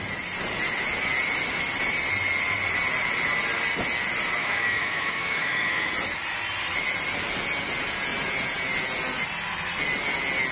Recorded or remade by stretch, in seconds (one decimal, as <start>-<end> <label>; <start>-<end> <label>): 0.0-4.4 recorded; 4.4-5.9 remade; 5.9-10.5 recorded